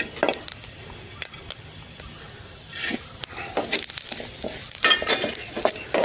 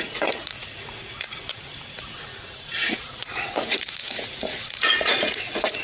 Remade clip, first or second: second